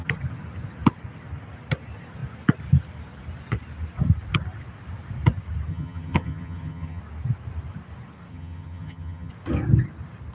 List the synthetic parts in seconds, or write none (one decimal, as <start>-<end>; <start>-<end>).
5.7-7.0; 8.3-9.3